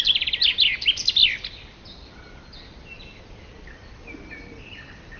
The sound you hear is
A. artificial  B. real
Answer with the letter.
B